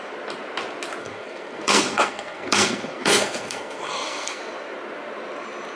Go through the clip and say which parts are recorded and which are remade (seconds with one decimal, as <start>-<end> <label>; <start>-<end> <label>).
0.0-1.0 recorded; 1.0-4.4 remade; 4.4-5.8 recorded